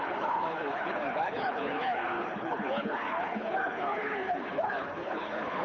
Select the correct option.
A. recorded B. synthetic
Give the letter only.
B